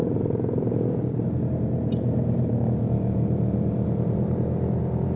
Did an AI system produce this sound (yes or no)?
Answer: yes